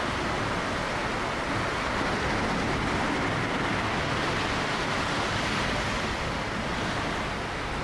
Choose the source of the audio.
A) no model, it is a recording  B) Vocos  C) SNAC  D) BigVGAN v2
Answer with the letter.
A